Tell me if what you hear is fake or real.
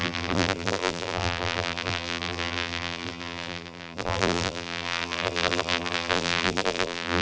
fake